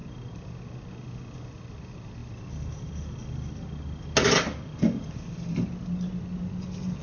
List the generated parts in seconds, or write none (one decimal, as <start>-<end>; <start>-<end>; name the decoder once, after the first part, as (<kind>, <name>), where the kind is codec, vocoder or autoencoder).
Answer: none